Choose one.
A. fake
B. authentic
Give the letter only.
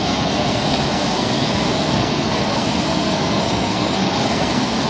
A